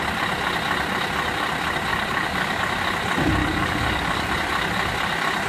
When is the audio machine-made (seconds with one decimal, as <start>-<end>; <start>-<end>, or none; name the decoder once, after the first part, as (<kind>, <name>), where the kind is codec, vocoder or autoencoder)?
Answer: 1.9-2.6 (codec, DAC); 3.4-4.3